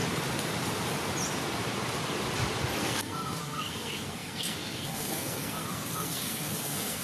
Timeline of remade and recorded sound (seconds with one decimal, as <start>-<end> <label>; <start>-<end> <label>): 0.0-2.8 recorded; 2.8-7.0 remade